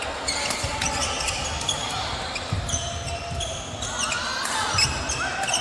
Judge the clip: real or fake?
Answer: real